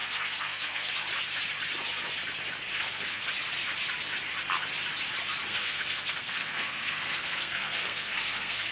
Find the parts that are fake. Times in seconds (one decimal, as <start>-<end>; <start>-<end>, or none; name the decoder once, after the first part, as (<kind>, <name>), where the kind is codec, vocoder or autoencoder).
0.0-0.9 (codec, SNAC); 2.7-3.3; 5.5-8.7